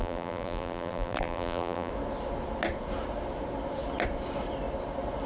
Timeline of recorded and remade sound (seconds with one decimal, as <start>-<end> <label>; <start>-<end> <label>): 0.0-1.9 remade; 1.9-5.3 recorded